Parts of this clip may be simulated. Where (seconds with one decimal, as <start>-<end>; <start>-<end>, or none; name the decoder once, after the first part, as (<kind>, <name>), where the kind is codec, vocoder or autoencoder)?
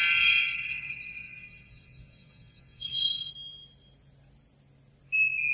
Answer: 0.0-3.3 (vocoder, WaveNeXt)